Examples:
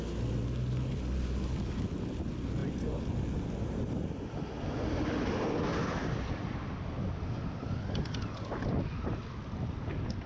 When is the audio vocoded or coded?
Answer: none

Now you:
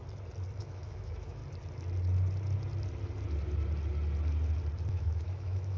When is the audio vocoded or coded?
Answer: 0.6-1.4 (autoencoder, DAC-VAE); 4.9-5.8

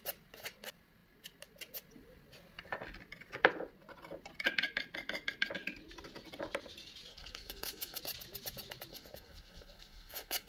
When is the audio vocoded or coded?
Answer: 7.1-8.0 (codec, SNAC); 8.9-10.5

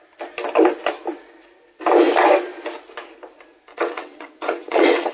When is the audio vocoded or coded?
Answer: 3.7-5.1 (vocoder, WaveNeXt)